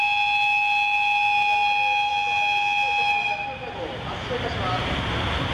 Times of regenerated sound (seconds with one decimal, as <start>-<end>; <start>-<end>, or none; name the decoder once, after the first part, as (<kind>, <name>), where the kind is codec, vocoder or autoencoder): none